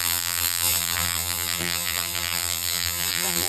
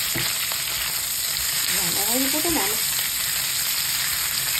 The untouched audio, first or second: second